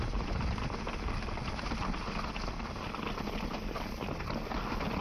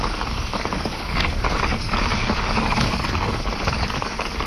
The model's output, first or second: second